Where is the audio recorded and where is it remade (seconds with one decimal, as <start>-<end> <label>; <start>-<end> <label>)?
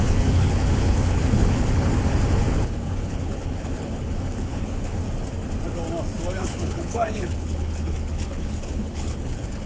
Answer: 0.0-1.9 remade; 1.9-2.5 recorded; 2.5-5.0 remade; 5.0-6.4 recorded; 6.4-9.7 remade